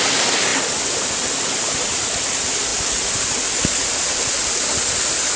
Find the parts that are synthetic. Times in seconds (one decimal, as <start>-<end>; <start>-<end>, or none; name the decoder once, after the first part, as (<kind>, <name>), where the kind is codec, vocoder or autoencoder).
none